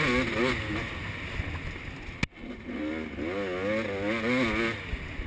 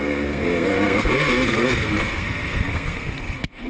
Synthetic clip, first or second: second